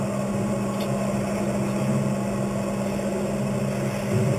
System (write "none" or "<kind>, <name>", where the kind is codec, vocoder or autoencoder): none